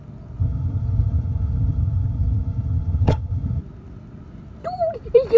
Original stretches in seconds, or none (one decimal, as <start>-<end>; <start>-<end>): 0.0-0.4; 3.6-5.4